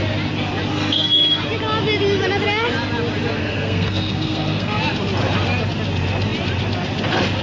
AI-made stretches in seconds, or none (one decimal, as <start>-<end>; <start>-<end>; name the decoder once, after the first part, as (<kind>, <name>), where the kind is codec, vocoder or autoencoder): 0.7-1.4 (codec, SNAC); 3.4-4.8